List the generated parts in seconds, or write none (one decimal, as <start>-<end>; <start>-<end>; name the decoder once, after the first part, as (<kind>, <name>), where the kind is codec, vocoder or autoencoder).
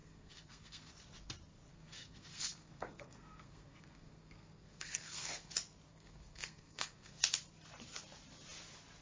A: 0.0-0.9 (codec, SNAC); 1.7-5.5; 5.9-7.2